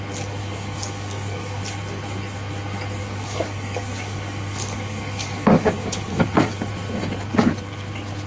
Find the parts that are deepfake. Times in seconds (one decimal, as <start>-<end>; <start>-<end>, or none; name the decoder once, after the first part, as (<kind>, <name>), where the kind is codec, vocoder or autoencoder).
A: 0.4-1.6 (codec, DAC); 3.0-6.7